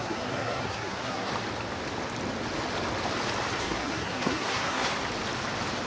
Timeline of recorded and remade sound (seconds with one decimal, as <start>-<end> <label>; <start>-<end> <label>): 0.0-1.3 remade; 1.3-3.6 recorded; 3.6-4.9 remade; 4.9-5.9 recorded